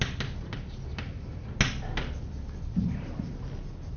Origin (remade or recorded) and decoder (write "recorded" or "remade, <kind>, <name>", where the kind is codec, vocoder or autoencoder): recorded